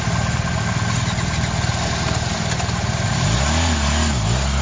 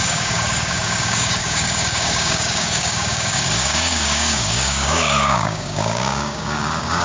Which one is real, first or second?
first